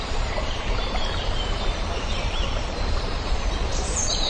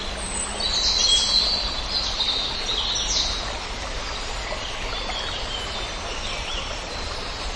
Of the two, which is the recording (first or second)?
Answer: second